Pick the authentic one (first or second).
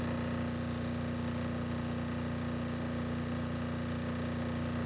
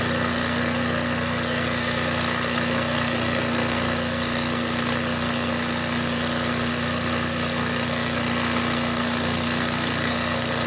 first